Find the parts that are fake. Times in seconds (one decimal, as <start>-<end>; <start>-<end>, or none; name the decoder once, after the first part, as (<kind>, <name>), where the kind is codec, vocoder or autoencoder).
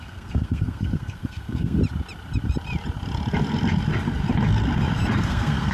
0.0-1.8 (codec, SNAC); 5.2-5.7